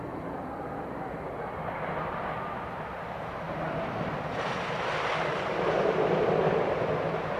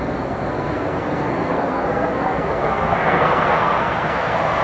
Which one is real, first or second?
first